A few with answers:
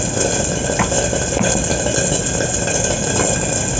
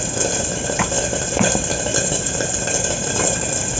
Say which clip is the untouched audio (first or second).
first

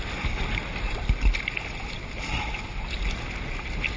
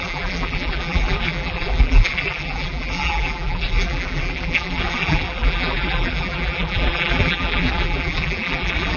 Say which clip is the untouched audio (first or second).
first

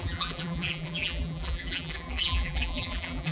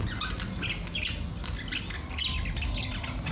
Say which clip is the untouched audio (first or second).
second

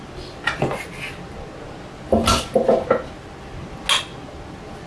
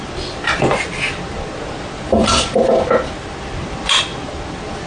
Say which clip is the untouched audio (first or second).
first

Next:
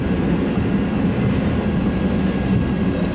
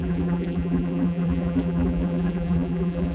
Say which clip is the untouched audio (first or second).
first